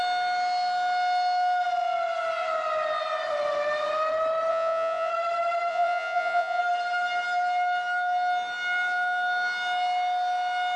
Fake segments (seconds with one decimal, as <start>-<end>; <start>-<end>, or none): 4.5-5.1; 5.7-6.6